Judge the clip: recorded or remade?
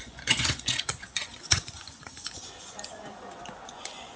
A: remade